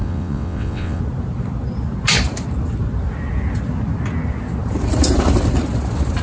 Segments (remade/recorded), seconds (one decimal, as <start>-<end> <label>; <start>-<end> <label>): 0.0-1.0 remade; 1.0-6.2 recorded